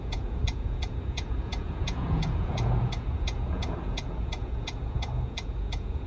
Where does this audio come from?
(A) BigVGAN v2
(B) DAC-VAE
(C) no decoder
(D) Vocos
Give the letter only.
D